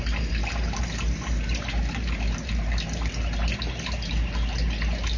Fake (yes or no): no